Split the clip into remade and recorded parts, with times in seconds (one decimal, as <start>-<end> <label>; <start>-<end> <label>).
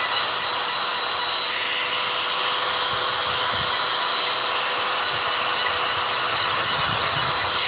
0.0-6.3 recorded; 6.3-7.3 remade; 7.3-7.7 recorded